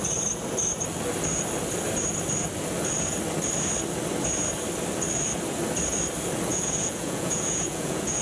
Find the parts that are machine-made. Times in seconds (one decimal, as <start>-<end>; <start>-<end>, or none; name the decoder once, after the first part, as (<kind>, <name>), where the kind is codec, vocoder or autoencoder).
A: 6.5-8.2 (vocoder, Vocos)